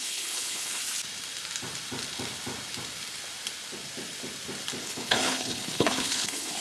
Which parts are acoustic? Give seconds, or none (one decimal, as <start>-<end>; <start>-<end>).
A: 0.8-4.8

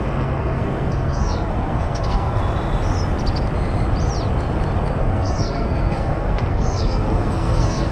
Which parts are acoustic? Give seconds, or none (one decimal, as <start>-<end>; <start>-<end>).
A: 2.4-5.0

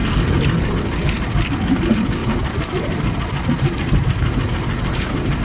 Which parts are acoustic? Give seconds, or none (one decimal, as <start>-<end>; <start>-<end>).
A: 0.0-2.2

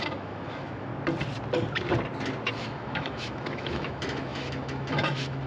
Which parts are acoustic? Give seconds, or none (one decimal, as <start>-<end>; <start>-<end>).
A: 0.9-2.5